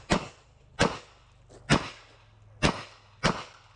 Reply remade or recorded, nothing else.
recorded